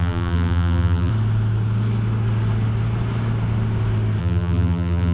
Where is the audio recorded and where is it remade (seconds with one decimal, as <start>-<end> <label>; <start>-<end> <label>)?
0.0-1.1 remade; 1.1-4.2 recorded; 4.2-5.1 remade